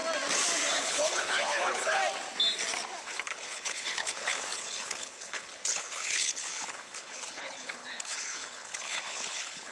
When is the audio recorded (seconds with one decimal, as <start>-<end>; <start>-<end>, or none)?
0.0-0.7; 2.0-3.0